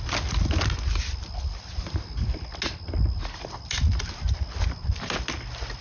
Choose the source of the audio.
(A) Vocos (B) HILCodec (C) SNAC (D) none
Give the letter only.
D